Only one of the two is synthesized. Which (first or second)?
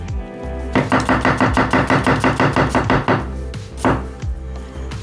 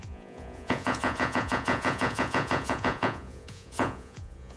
second